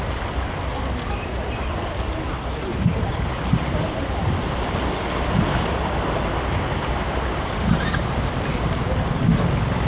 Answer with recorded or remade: recorded